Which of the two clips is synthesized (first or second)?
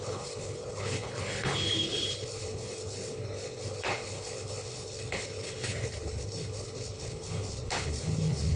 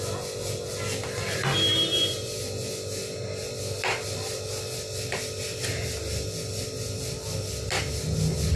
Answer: first